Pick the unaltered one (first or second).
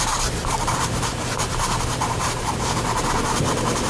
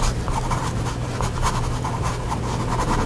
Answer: second